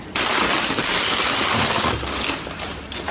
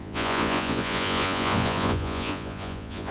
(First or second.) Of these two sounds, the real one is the first